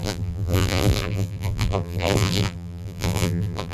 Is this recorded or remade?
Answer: remade